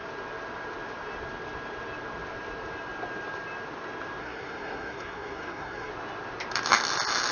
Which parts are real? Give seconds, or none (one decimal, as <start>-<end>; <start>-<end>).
0.0-4.2; 5.9-7.3